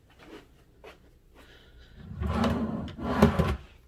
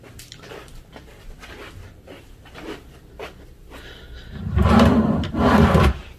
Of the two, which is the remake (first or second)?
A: second